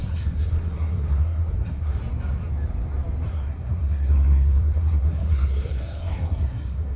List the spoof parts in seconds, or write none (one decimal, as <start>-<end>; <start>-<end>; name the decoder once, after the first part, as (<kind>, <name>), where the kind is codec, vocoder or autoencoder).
0.0-2.0 (codec, SNAC); 3.3-7.0